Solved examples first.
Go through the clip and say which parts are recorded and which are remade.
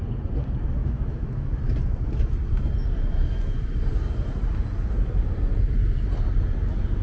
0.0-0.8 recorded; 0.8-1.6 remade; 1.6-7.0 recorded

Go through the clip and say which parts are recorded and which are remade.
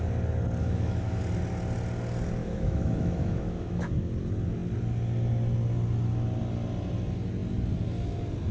0.0-0.6 recorded; 0.6-1.2 remade; 1.2-2.4 recorded; 2.4-4.1 remade; 4.1-8.5 recorded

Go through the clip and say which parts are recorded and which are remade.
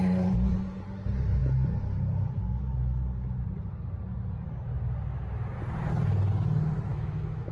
0.0-6.9 recorded; 6.9-7.5 remade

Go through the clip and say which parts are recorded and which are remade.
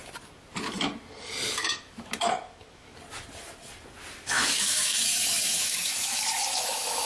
0.0-1.6 recorded; 1.6-2.9 remade; 2.9-4.3 recorded; 4.3-7.1 remade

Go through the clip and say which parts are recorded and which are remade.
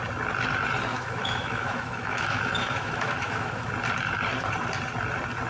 0.0-0.9 recorded; 0.9-3.7 remade; 3.7-5.5 recorded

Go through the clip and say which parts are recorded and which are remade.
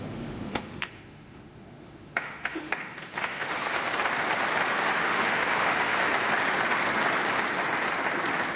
0.0-3.8 remade; 3.8-4.8 recorded; 4.8-6.1 remade; 6.1-8.6 recorded